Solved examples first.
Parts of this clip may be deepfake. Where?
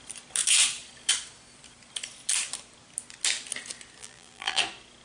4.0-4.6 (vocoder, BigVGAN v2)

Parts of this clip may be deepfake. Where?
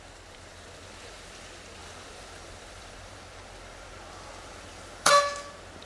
1.8-5.1 (vocoder, BigVGAN v2)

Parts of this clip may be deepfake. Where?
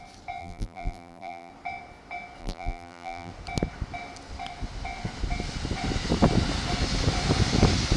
0.4-1.5 (vocoder, BigVGAN v2); 2.4-3.3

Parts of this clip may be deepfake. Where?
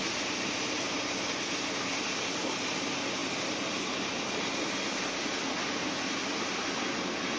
none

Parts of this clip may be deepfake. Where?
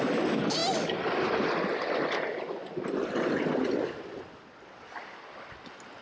none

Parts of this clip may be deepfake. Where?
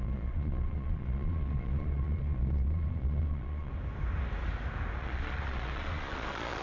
0.0-3.7 (vocoder, Vocos); 5.0-6.6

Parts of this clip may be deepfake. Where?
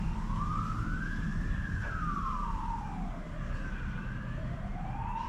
none